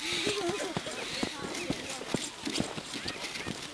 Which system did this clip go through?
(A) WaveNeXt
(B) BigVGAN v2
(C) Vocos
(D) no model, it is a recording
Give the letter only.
D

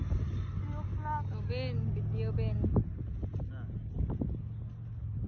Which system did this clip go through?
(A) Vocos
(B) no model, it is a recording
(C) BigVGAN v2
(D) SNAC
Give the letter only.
B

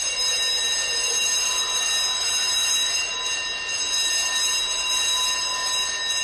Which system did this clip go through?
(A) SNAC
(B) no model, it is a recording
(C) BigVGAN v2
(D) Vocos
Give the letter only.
B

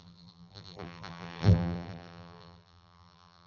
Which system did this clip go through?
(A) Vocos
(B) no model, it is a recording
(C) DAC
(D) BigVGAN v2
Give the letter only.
D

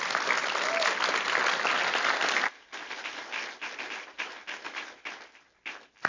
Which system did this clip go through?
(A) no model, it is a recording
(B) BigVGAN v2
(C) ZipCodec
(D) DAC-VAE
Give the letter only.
A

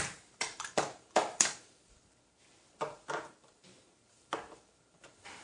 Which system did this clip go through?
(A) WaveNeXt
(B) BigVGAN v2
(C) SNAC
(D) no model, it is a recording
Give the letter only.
B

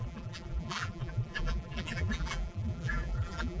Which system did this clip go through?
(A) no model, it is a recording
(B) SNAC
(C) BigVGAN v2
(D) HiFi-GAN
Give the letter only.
C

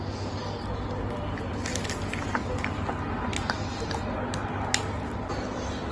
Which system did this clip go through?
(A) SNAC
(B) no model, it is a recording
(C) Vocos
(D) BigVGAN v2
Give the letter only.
B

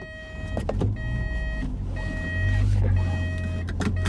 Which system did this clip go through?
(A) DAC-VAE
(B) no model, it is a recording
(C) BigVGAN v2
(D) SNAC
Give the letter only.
B